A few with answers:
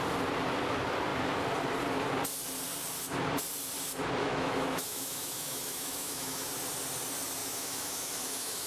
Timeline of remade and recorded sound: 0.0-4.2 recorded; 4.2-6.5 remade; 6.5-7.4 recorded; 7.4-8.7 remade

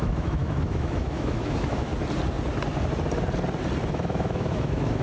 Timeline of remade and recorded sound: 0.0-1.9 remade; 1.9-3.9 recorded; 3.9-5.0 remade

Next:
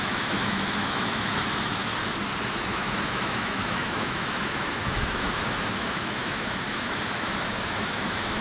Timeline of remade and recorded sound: 0.0-1.9 remade; 1.9-2.6 recorded; 2.6-8.4 remade

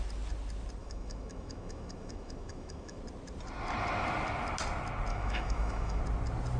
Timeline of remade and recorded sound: 0.0-0.8 recorded; 0.8-3.0 remade; 3.0-5.1 recorded; 5.1-6.0 remade; 6.0-6.6 recorded